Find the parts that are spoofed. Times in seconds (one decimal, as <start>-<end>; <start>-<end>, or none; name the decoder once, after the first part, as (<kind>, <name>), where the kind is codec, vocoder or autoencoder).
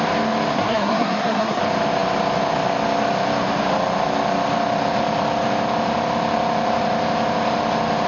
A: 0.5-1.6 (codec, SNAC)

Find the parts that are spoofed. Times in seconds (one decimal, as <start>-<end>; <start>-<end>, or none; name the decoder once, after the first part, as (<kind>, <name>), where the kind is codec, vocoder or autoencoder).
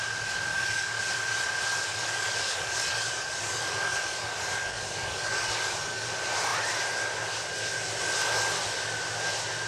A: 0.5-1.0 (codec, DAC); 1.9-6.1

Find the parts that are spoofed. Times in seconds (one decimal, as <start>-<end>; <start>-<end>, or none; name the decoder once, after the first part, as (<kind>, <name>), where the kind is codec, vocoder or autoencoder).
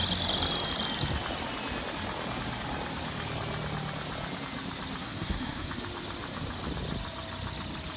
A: 5.0-5.7 (codec, SNAC)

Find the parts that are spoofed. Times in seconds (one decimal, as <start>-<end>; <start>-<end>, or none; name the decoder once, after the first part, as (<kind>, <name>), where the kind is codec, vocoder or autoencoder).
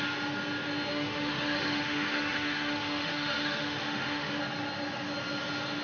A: 0.9-4.4 (autoencoder, DAC-VAE)